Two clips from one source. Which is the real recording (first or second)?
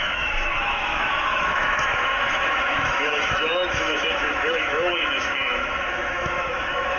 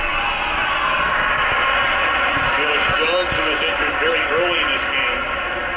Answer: second